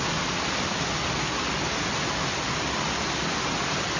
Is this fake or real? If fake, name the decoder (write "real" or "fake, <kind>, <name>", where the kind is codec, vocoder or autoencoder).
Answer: real